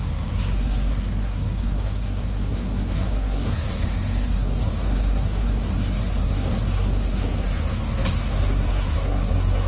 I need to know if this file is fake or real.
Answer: fake